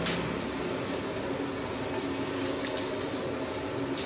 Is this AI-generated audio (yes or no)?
no